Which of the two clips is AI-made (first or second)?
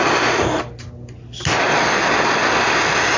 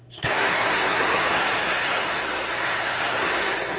second